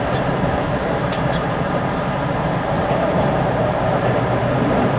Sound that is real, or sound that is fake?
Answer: fake